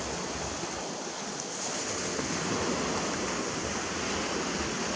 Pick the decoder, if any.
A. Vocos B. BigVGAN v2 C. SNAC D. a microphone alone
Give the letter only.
D